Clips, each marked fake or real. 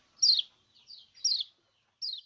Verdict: real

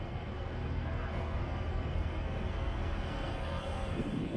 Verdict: fake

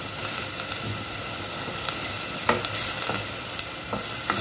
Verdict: real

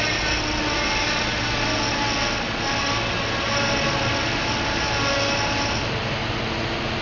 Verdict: real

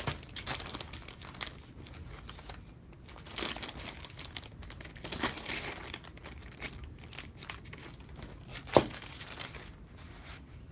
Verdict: real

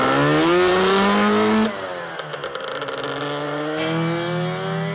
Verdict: real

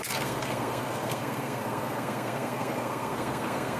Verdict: fake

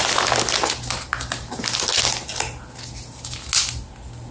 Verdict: real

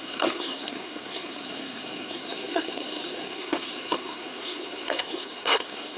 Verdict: fake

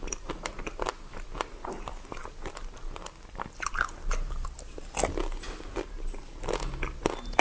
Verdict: real